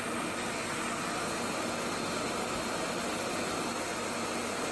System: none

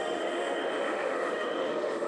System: autoencoder, DAC-VAE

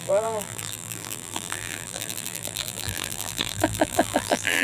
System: vocoder, BigVGAN v2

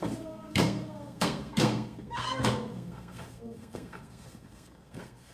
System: codec, SNAC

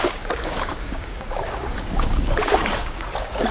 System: codec, DAC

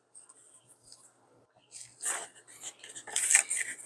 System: none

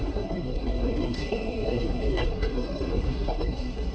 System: codec, SNAC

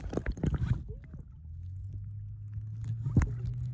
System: none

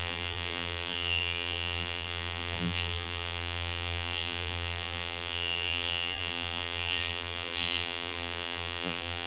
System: vocoder, BigVGAN v2